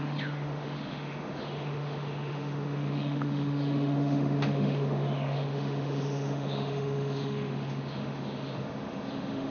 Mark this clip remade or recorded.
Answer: remade